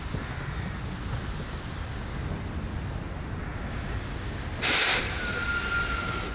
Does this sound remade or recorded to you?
recorded